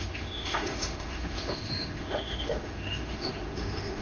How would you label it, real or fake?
fake